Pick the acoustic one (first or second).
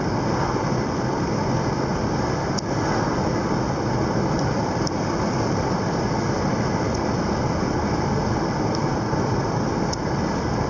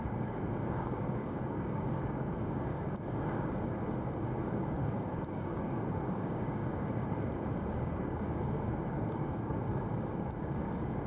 first